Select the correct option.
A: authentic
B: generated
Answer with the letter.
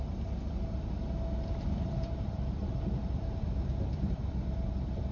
B